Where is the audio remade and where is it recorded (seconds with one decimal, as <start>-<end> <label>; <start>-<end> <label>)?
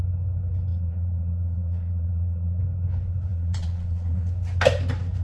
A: 0.0-0.7 recorded; 0.7-2.6 remade; 2.6-3.3 recorded; 3.3-4.3 remade; 4.3-5.2 recorded